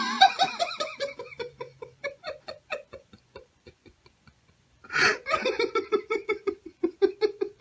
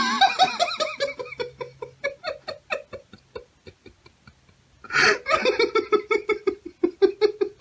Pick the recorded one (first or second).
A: second